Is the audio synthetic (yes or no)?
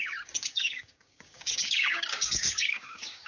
yes